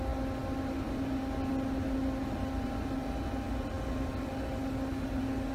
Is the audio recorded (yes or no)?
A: yes